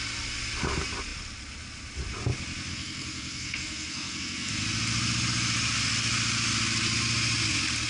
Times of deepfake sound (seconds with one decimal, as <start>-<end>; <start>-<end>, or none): 2.7-4.5